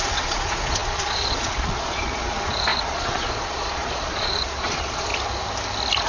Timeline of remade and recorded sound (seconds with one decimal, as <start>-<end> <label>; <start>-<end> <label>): 0.0-5.1 remade; 5.1-6.1 recorded